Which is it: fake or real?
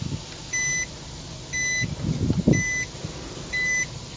real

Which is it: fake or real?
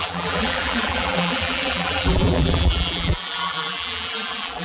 fake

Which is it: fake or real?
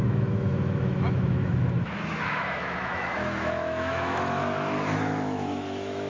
fake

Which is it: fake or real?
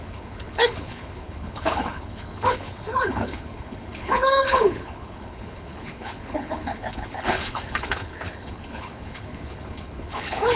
fake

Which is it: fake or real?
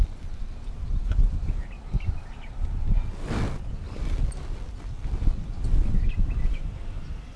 real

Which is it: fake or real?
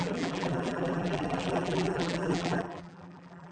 fake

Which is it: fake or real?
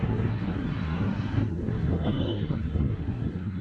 fake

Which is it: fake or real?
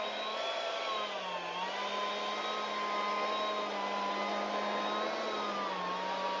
real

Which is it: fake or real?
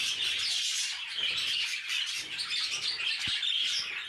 real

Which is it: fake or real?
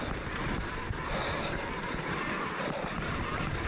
real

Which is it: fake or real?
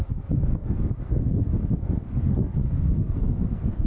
fake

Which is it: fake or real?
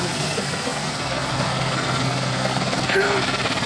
fake